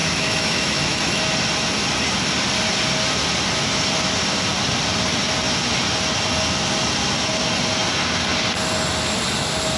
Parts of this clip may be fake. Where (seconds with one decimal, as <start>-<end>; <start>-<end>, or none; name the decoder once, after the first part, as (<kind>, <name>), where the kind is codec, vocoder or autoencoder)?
0.0-1.2 (autoencoder, DAC-VAE)